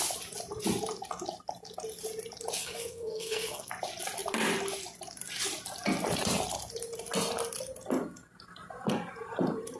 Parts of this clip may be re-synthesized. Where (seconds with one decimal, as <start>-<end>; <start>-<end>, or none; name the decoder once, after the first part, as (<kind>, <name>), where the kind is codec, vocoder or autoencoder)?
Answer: 2.6-3.7 (codec, SNAC)